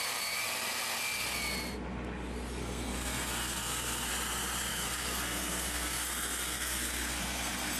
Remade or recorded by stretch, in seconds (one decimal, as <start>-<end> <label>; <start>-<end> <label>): 0.0-2.6 recorded; 2.6-4.1 remade; 4.1-4.7 recorded; 4.7-7.8 remade